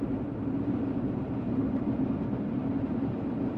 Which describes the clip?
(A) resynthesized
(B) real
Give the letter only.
A